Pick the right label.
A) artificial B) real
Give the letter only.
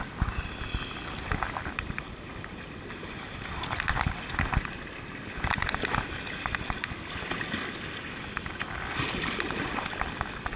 B